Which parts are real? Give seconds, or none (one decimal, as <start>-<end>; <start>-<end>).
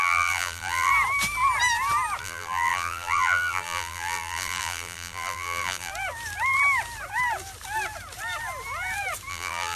0.9-2.2; 5.9-9.3